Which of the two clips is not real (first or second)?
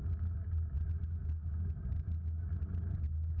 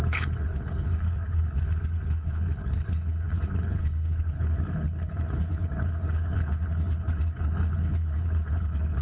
second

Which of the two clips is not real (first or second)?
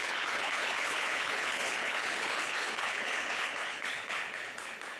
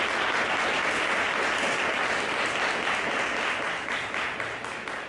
first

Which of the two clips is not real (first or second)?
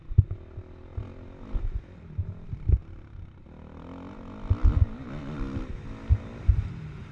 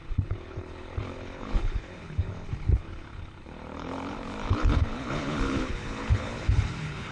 second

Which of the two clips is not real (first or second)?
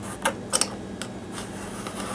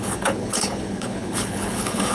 second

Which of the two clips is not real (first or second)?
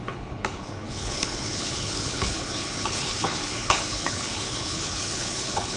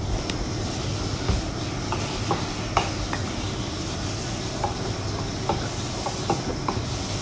first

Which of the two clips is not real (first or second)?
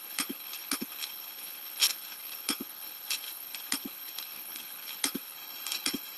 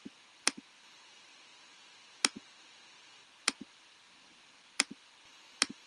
first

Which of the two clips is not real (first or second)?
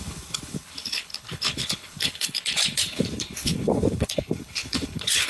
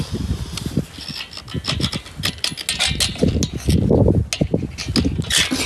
first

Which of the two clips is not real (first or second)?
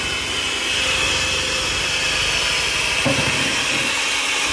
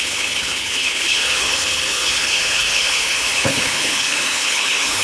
second